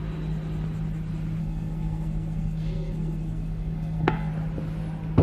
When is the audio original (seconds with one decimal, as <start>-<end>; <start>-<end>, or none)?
0.0-1.4; 4.3-5.2